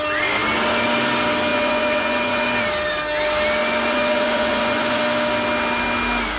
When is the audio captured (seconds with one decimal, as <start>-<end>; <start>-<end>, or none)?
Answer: 0.0-1.5; 2.5-3.6; 5.0-6.4